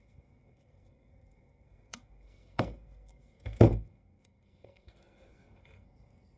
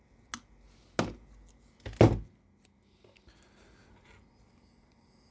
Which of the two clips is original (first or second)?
second